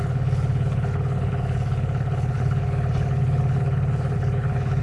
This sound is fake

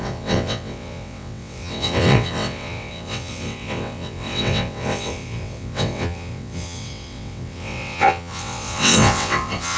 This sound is fake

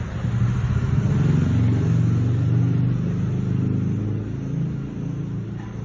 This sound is real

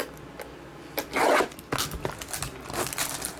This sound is real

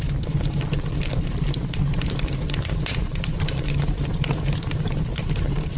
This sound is fake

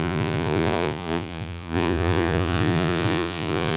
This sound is fake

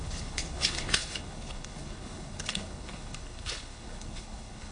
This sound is fake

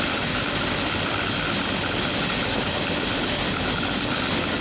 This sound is real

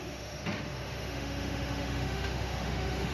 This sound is fake